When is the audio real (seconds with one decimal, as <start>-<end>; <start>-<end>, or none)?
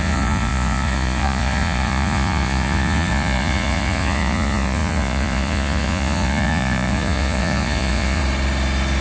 8.2-9.0